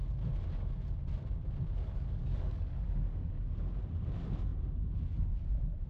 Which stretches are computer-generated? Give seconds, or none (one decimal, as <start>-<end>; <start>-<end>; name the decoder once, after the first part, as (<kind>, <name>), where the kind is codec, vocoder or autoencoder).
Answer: 1.8-3.7 (codec, DAC)